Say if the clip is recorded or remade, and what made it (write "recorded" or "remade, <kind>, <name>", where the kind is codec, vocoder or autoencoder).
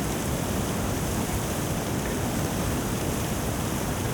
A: remade, vocoder, BigVGAN v2